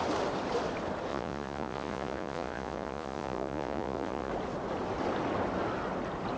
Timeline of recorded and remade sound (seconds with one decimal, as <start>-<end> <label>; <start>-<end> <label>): 0.0-1.1 recorded; 1.1-4.3 remade; 4.3-6.4 recorded